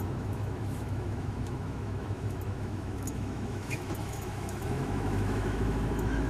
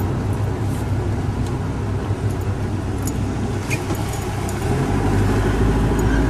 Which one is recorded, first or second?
second